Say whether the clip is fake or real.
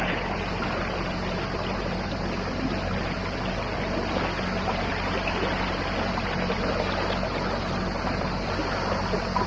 real